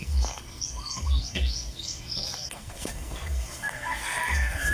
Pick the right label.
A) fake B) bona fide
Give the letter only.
A